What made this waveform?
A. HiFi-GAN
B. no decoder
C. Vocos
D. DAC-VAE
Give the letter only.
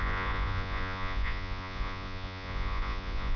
C